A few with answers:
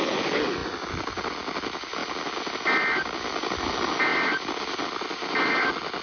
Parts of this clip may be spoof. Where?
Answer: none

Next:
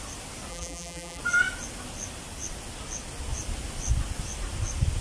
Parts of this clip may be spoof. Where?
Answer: 0.5-1.2 (vocoder, BigVGAN v2)

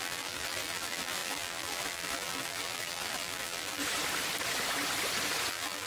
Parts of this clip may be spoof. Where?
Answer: 0.0-3.8 (vocoder, BigVGAN v2); 5.5-5.9

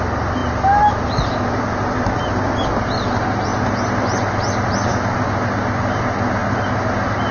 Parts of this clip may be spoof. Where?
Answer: none

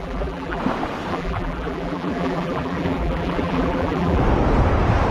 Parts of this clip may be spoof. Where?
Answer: 0.0-0.6 (vocoder, BigVGAN v2); 1.1-4.2

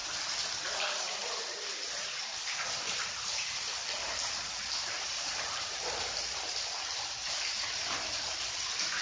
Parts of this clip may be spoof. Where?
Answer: 0.6-9.0 (vocoder, BigVGAN v2)

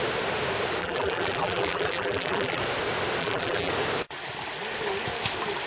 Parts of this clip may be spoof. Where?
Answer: 0.8-2.6 (vocoder, BigVGAN v2); 3.2-3.7

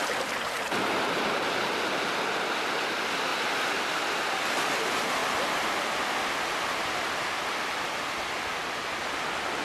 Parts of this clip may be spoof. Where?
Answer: none